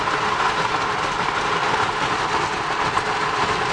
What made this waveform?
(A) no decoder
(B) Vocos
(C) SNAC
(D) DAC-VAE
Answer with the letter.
A